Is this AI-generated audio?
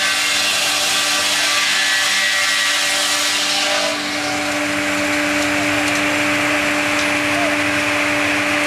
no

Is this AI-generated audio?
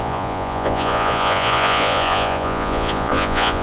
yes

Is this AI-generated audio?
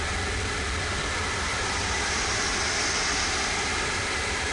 yes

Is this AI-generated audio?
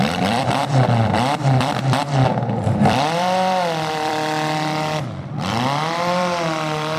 yes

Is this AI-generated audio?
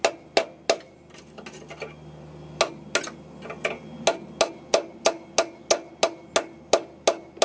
no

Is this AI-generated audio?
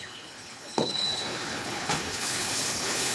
yes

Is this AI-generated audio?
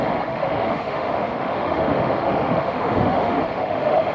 yes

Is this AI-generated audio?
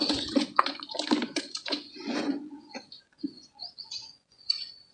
yes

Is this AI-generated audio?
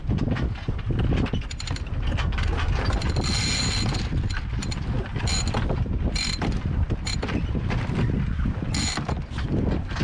no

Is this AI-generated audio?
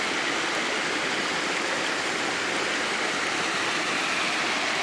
no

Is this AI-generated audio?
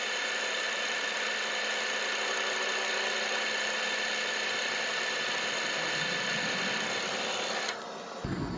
no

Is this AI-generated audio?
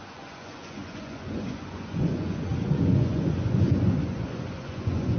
yes